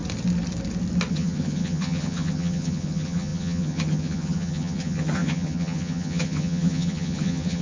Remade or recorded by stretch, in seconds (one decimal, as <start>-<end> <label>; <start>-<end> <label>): 0.0-1.1 recorded; 1.1-7.6 remade